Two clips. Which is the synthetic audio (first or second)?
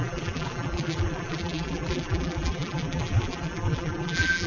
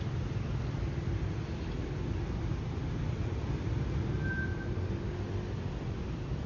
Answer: first